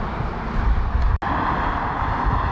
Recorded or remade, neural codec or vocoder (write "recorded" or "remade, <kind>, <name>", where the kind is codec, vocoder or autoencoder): recorded